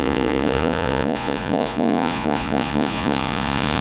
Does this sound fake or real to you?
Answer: fake